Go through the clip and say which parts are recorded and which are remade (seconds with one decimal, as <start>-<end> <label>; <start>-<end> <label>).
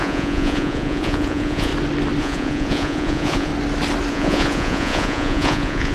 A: 0.0-1.7 remade; 1.7-2.2 recorded; 2.2-3.5 remade; 3.5-4.1 recorded; 4.1-5.9 remade